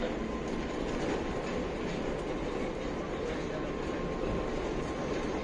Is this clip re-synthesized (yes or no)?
no